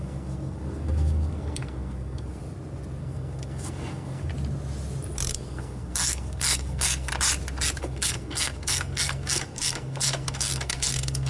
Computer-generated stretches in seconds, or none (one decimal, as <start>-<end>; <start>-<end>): 0.0-2.4; 3.0-4.3; 5.3-7.1; 7.8-11.3